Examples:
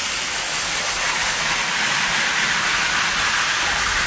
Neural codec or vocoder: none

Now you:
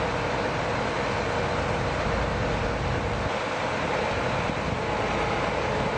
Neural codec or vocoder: none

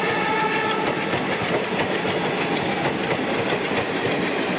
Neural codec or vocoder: none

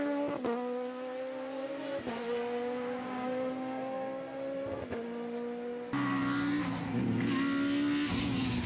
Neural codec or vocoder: none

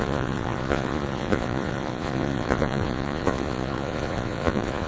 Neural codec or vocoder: vocoder, Vocos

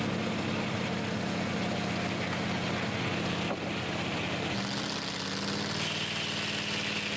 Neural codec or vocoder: none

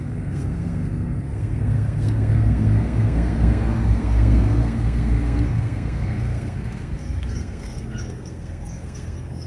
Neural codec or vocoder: codec, SNAC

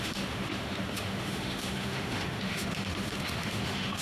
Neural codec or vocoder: autoencoder, DAC-VAE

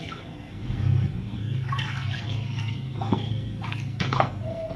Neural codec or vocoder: codec, SNAC